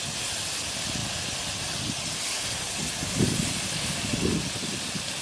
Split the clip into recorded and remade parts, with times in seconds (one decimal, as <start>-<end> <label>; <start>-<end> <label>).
0.0-5.2 recorded